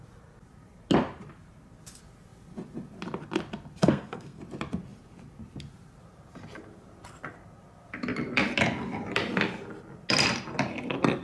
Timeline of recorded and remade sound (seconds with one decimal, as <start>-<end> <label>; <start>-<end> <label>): 0.0-3.8 recorded; 3.8-4.4 remade; 4.4-11.2 recorded